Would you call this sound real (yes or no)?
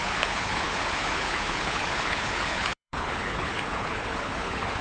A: no